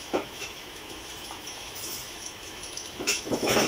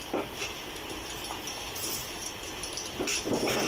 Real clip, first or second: second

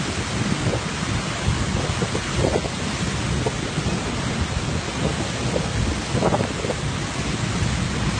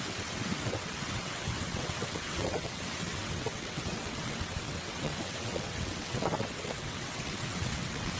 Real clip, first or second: first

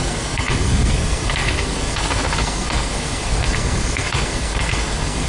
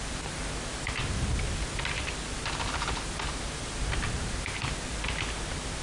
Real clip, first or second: second